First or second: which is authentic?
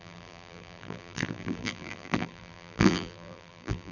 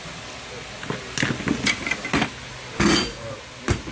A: second